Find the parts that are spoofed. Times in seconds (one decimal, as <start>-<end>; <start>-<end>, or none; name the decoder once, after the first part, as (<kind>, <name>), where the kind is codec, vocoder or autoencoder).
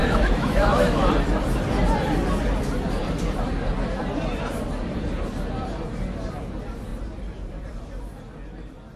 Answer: 0.0-1.1 (autoencoder, DAC-VAE)